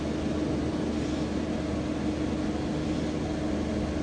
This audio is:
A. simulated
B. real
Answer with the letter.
B